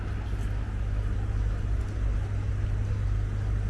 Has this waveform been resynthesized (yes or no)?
no